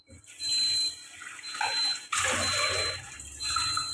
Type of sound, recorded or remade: recorded